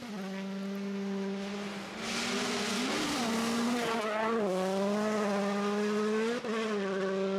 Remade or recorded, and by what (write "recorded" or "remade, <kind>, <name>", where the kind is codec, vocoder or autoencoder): recorded